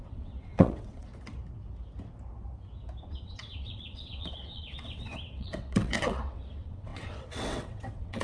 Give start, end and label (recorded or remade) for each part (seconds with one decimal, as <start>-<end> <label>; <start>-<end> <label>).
0.0-1.1 remade; 1.1-3.0 recorded; 3.0-8.2 remade